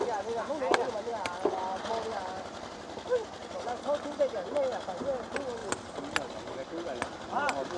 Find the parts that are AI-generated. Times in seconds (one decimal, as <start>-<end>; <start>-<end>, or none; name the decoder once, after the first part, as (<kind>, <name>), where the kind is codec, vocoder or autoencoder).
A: none